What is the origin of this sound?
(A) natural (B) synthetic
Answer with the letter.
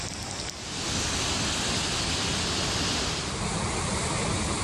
A